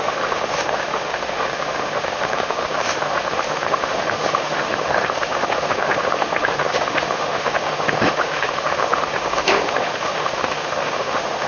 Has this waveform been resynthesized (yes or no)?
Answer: yes